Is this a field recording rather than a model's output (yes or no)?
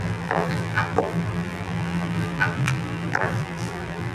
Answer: no